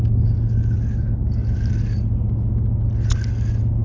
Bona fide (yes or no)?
yes